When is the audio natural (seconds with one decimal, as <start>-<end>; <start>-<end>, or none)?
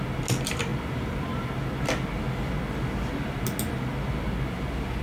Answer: 0.0-5.0